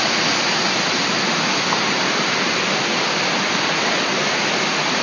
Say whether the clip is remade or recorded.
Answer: recorded